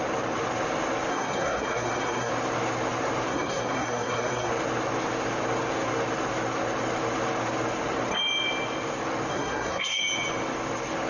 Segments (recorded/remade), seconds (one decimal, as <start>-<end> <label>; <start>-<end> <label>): 0.0-1.1 recorded; 1.1-2.3 remade; 2.3-3.3 recorded; 3.3-4.5 remade; 4.5-9.3 recorded; 9.3-10.0 remade; 10.0-11.1 recorded